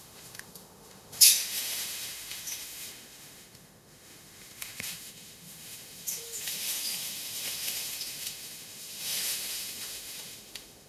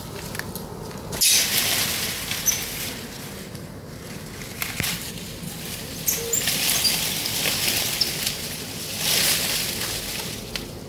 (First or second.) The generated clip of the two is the first